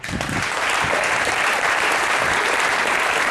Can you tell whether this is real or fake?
fake